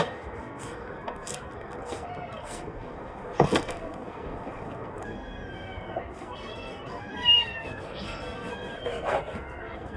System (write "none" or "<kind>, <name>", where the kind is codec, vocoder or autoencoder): codec, SNAC